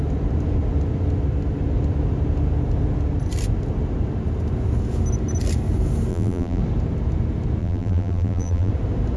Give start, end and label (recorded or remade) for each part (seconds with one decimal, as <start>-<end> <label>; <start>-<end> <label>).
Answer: 0.0-6.1 recorded; 6.1-6.6 remade; 6.6-7.6 recorded; 7.6-8.7 remade; 8.7-9.2 recorded